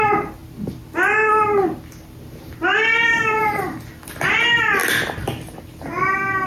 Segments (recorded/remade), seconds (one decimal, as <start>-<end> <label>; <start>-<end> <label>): 0.0-0.4 remade; 0.4-1.3 recorded; 1.3-4.8 remade; 4.8-5.6 recorded; 5.6-6.5 remade